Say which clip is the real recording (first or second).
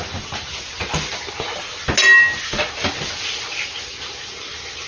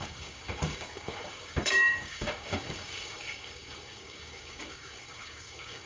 first